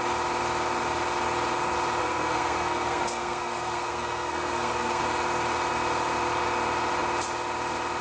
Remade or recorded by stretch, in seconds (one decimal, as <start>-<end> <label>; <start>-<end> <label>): 0.0-2.0 recorded; 2.0-5.0 remade; 5.0-8.0 recorded

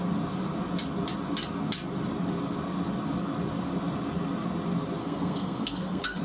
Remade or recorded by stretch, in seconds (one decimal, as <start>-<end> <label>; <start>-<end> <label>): 0.0-5.0 recorded; 5.0-6.2 remade

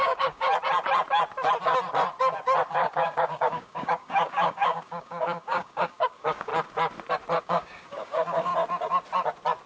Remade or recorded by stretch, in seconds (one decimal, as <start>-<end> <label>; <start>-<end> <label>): 0.0-0.5 remade; 0.5-2.7 recorded; 2.7-6.5 remade; 6.5-7.4 recorded; 7.4-8.5 remade; 8.5-9.7 recorded